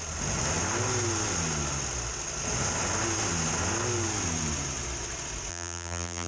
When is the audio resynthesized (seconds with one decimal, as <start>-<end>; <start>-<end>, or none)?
5.5-6.3